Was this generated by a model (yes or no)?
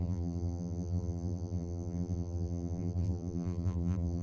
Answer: yes